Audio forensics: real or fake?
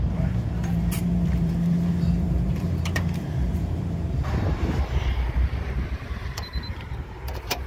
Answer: fake